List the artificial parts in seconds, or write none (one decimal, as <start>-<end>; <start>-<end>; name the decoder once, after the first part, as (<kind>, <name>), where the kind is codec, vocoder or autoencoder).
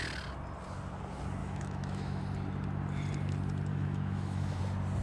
1.4-2.2 (autoencoder, DAC-VAE); 3.7-4.6